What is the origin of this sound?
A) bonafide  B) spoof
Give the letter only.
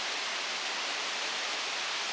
A